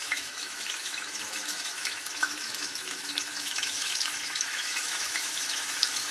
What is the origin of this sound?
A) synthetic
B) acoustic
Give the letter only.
A